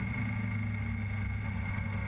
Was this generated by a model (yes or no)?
no